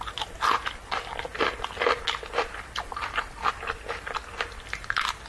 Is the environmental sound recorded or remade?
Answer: recorded